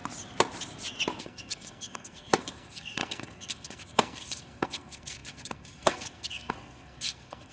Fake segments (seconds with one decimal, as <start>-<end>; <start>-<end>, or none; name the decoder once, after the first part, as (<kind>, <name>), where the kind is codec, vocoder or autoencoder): 1.2-7.5 (codec, SNAC)